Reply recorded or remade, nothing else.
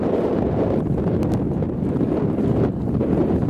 recorded